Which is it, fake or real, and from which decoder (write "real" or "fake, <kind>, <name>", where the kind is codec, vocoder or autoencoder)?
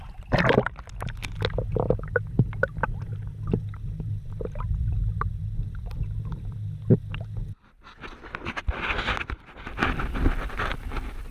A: real